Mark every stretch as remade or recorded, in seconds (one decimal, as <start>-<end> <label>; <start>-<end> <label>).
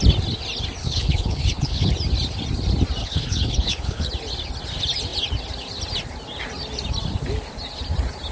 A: 0.0-0.8 recorded; 0.8-1.9 remade; 1.9-3.0 recorded; 3.0-4.1 remade; 4.1-8.3 recorded